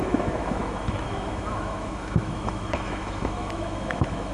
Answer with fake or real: fake